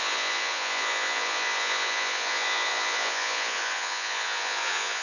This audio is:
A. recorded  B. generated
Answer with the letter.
B